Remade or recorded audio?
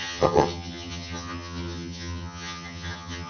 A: remade